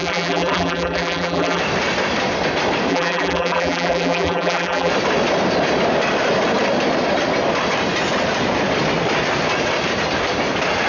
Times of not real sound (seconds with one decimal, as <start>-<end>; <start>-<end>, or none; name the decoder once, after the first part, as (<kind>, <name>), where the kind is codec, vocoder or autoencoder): 0.0-1.6 (vocoder, BigVGAN v2); 2.9-4.9